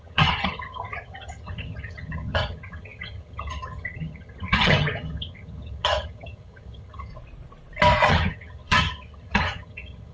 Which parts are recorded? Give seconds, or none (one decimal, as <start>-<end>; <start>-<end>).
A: 7.1-8.1